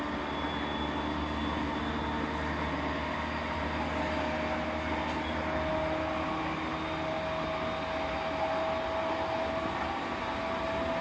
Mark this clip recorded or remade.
recorded